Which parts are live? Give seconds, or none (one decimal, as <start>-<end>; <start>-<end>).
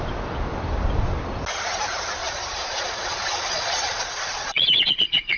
0.0-2.2